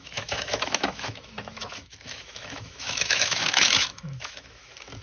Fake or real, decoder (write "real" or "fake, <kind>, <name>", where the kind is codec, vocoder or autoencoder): fake, autoencoder, DAC-VAE